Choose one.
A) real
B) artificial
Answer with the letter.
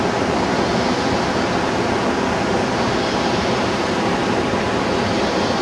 A